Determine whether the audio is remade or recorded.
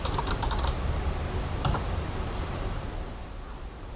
remade